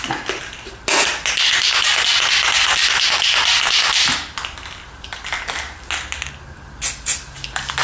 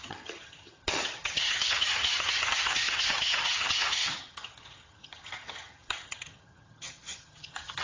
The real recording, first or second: first